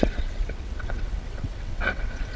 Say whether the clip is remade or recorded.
remade